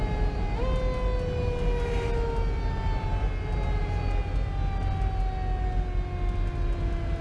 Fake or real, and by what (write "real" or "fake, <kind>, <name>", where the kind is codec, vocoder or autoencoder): real